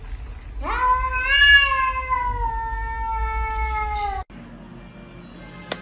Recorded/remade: recorded